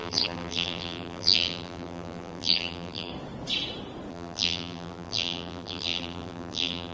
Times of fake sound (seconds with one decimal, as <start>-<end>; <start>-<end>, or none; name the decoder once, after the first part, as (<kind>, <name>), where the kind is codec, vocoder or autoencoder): 0.0-3.1 (vocoder, BigVGAN v2); 4.1-6.9